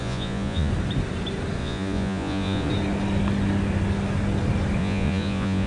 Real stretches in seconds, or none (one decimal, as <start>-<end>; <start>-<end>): 0.7-1.6; 2.7-4.8

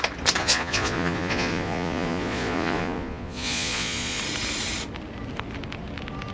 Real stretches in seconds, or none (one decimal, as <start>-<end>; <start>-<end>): 0.0-0.4; 4.2-6.3